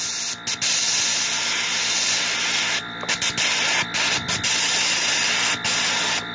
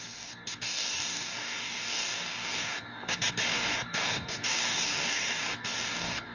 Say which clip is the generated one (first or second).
second